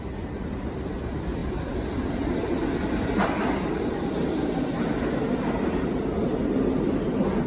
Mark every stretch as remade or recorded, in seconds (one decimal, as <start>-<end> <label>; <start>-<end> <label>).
0.0-7.5 recorded